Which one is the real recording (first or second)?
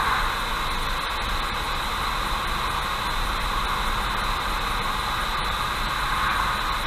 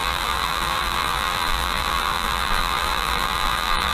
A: first